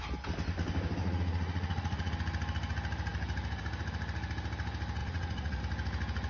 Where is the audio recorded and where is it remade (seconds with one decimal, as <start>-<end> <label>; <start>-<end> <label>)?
0.0-1.0 recorded; 1.0-2.1 remade; 2.1-5.0 recorded; 5.0-5.6 remade; 5.6-6.3 recorded